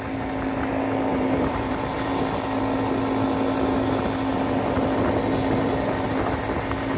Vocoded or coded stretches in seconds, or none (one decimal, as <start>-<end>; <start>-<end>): 1.1-2.2